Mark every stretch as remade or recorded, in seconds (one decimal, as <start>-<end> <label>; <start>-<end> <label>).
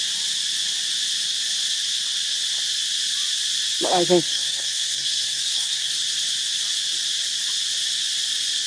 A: 0.0-4.3 recorded; 4.3-5.9 remade; 5.9-8.7 recorded